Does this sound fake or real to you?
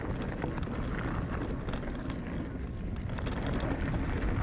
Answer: real